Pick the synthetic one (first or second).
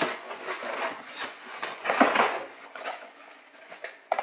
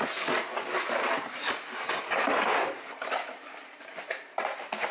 first